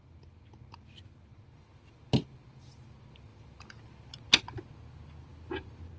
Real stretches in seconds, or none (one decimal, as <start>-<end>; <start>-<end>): 0.0-6.0